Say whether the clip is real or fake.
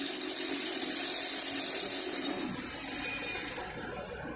real